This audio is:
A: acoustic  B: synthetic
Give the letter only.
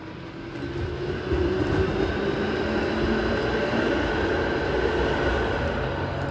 A